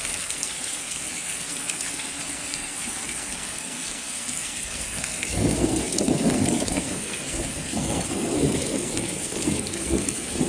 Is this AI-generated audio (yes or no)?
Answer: yes